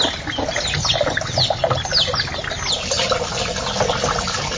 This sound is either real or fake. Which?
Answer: real